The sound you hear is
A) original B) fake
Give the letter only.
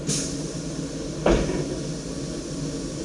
A